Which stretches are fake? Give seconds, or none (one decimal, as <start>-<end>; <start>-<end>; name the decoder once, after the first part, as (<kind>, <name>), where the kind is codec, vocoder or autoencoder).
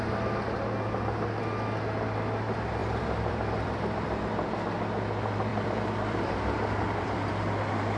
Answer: 2.8-4.2 (vocoder, BigVGAN v2); 5.5-7.3